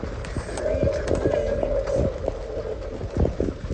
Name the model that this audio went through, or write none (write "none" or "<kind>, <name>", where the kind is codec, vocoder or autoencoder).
none